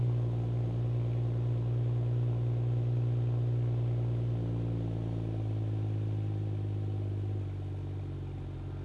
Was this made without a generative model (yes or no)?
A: yes